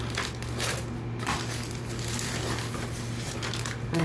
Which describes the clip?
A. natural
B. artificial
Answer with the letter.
A